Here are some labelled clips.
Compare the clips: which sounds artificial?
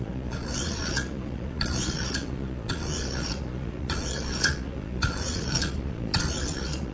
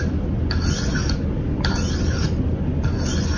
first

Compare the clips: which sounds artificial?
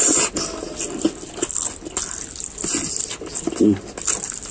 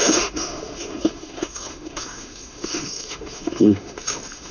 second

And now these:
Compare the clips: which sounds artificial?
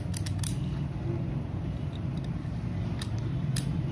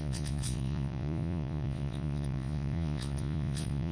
second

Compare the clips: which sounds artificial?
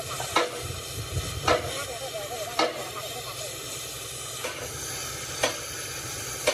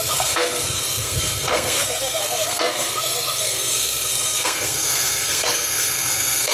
second